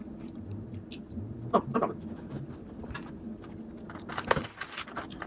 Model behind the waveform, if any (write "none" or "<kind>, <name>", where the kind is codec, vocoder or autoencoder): none